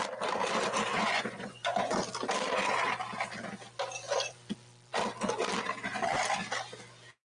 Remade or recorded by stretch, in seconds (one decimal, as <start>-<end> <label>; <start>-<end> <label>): 0.0-0.9 recorded; 0.9-2.0 remade; 2.0-7.3 recorded